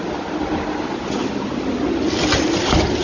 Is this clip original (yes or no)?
yes